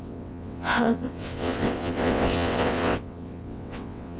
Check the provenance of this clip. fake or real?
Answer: fake